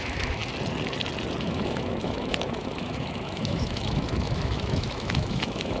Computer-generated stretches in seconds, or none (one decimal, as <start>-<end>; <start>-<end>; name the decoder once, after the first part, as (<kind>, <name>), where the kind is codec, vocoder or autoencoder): 0.0-0.4 (autoencoder, DAC-VAE); 1.4-5.8